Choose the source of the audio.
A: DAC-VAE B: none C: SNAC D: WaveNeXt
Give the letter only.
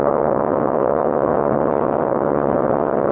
D